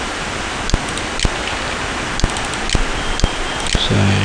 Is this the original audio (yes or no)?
yes